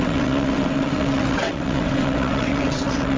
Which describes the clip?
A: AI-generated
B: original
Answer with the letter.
A